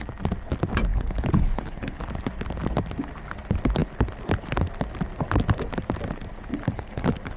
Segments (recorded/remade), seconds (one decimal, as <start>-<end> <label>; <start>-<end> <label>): 0.0-0.9 recorded; 0.9-2.0 remade; 2.0-6.5 recorded; 6.5-7.4 remade